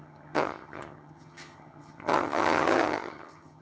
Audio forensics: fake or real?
fake